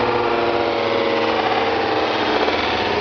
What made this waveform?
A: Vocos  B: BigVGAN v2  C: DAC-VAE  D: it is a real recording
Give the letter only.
D